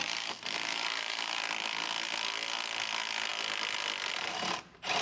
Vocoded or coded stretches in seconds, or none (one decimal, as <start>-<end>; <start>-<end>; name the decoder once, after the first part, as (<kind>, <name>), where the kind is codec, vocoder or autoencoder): 0.0-1.4 (vocoder, BigVGAN v2)